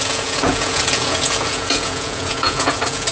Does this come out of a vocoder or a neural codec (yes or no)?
yes